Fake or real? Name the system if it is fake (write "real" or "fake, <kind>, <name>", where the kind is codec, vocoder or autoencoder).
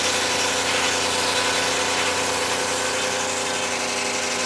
real